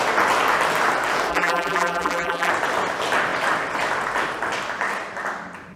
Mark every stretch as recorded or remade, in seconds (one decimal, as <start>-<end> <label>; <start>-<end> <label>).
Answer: 0.0-1.3 recorded; 1.3-2.5 remade; 2.5-5.8 recorded